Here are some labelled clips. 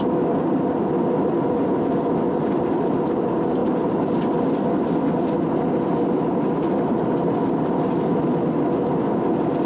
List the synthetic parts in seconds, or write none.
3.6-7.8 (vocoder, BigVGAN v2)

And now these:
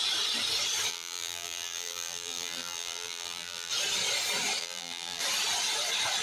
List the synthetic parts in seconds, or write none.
0.9-3.7 (vocoder, BigVGAN v2); 4.6-5.2